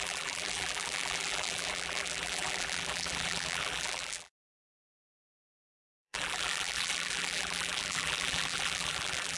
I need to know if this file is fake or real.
fake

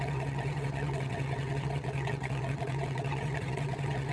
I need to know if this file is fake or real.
fake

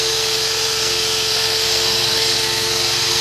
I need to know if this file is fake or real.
fake